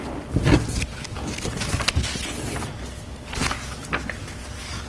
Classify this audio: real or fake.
real